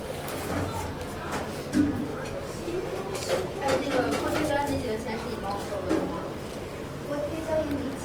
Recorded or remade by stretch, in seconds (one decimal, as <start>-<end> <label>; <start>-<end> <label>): 0.0-2.1 recorded; 2.1-4.5 remade; 4.5-6.7 recorded; 6.7-7.5 remade; 7.5-8.0 recorded